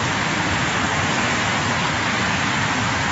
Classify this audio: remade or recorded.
remade